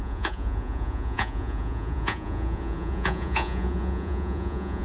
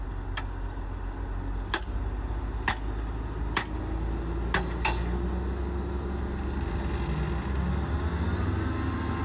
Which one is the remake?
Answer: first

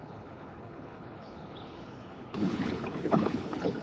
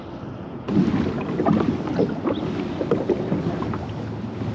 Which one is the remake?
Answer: first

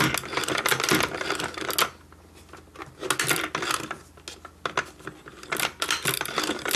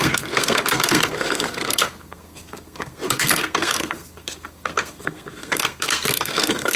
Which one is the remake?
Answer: second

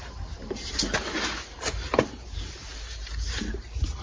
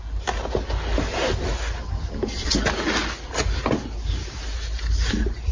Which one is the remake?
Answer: first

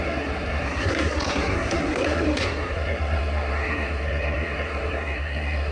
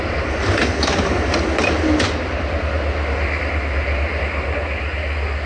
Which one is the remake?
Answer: first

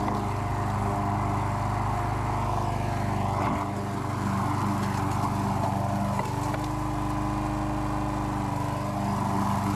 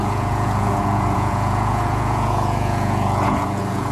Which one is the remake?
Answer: second